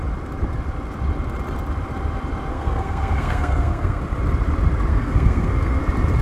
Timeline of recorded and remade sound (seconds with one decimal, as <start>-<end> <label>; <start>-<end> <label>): 0.0-2.5 recorded; 2.5-4.0 remade; 4.0-4.9 recorded; 4.9-5.8 remade; 5.8-6.2 recorded